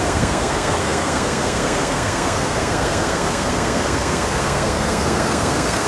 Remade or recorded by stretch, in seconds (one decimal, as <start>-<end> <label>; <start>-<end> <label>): 0.0-5.9 remade